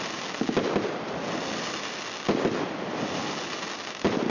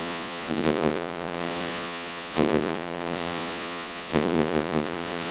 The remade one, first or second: second